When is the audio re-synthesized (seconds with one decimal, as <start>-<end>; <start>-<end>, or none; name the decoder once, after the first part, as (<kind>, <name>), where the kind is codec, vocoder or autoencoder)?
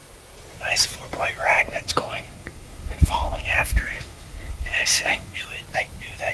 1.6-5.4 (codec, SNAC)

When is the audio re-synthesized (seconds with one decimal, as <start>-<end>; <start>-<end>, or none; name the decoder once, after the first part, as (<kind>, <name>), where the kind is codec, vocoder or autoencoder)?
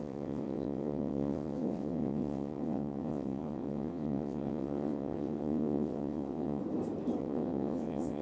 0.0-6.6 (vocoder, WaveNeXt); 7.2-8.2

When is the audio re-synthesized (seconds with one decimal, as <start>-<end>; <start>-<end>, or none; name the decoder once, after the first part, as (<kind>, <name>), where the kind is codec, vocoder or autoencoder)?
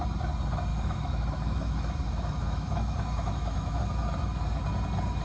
0.7-3.8 (autoencoder, DAC-VAE)